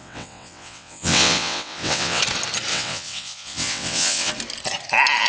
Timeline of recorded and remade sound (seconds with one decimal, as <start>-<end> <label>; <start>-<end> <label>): 0.0-2.2 remade; 2.2-2.7 recorded; 2.7-4.3 remade; 4.3-5.3 recorded